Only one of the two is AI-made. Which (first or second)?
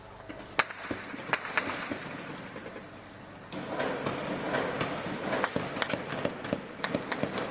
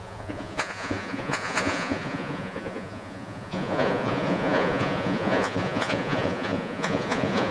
second